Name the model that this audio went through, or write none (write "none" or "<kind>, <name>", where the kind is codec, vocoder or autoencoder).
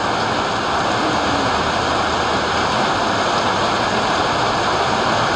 none